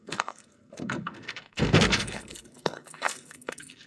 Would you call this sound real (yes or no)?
no